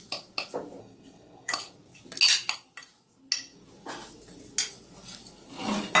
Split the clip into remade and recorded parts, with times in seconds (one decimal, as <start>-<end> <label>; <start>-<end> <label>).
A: 0.0-0.8 recorded; 0.8-1.5 remade; 1.5-6.0 recorded